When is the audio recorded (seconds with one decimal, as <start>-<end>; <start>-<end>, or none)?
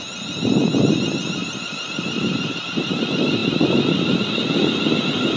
0.0-1.4; 3.0-5.4